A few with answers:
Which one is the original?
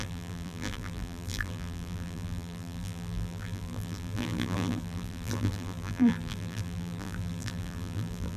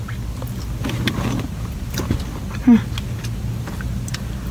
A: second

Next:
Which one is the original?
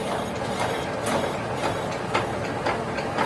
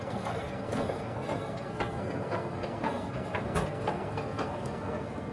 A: first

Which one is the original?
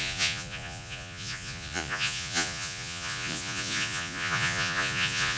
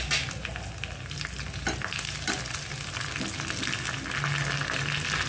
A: second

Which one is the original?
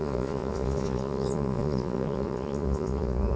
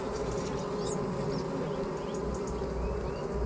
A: second